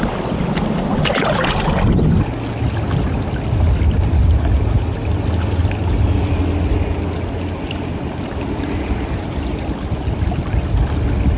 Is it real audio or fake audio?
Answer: real